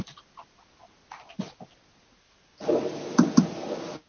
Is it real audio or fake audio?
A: real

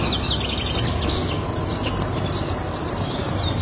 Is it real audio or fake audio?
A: real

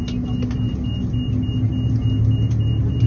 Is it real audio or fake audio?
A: real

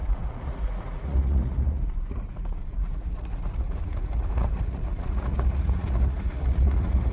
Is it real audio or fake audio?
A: fake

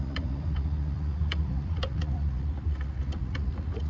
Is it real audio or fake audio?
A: fake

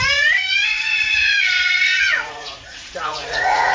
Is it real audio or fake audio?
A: fake